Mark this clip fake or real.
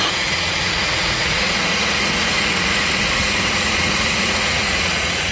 fake